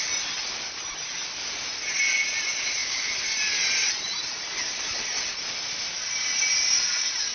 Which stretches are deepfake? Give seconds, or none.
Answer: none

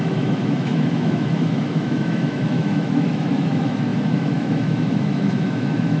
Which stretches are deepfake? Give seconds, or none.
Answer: 0.0-6.0 (autoencoder, DAC-VAE)

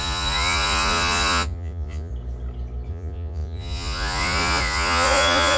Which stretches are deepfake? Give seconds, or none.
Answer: 0.0-2.1 (vocoder, Vocos); 2.9-5.6

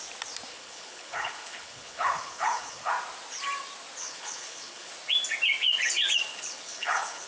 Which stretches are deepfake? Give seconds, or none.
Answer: 0.5-2.9 (codec, HILCodec); 4.0-4.9; 6.3-7.3